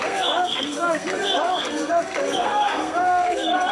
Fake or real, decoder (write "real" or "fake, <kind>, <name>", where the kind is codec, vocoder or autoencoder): fake, codec, SNAC